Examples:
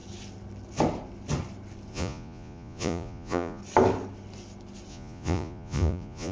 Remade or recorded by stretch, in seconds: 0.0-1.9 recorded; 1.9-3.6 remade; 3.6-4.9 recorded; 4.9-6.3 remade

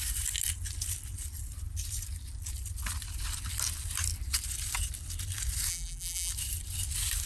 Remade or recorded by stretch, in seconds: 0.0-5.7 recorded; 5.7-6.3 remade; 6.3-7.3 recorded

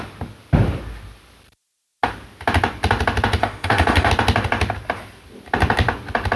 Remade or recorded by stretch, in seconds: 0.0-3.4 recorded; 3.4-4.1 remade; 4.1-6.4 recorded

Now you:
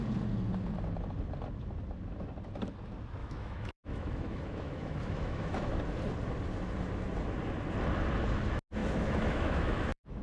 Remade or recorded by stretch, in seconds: 0.0-3.2 recorded; 3.2-5.7 remade; 5.7-8.8 recorded; 8.8-10.2 remade